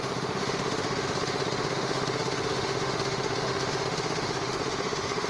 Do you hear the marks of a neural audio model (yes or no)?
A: yes